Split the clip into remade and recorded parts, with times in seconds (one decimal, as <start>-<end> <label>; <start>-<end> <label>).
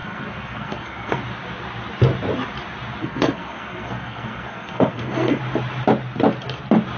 0.0-1.2 remade; 1.2-3.0 recorded; 3.0-5.4 remade; 5.4-7.0 recorded